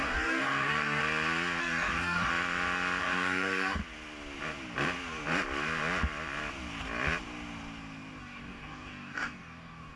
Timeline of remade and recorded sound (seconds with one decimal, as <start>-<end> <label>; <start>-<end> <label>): 0.0-1.0 remade; 1.0-1.6 recorded; 1.6-2.3 remade; 2.3-3.0 recorded; 3.0-3.8 remade; 3.8-8.2 recorded; 8.2-10.0 remade